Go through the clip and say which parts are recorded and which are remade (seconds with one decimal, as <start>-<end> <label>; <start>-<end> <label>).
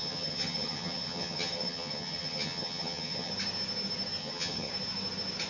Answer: 0.0-3.3 remade; 3.3-4.2 recorded; 4.2-4.7 remade; 4.7-5.5 recorded